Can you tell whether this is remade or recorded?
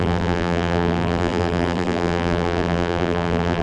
remade